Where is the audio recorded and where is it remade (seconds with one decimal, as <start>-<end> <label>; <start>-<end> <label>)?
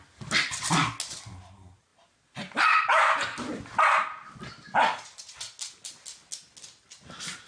0.0-7.5 recorded